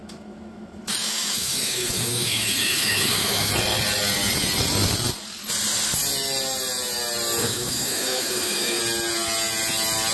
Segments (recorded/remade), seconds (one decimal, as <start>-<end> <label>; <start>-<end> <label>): 0.0-3.5 remade; 3.5-7.4 recorded; 7.4-8.8 remade; 8.8-10.1 recorded